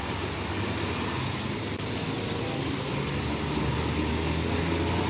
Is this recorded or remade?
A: recorded